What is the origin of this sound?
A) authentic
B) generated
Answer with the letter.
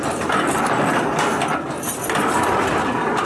A